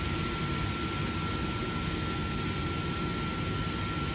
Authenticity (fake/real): real